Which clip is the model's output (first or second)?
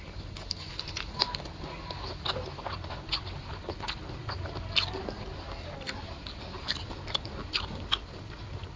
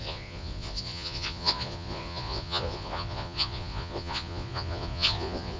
second